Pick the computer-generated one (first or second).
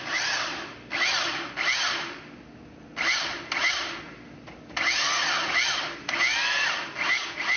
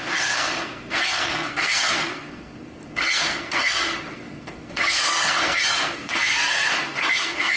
second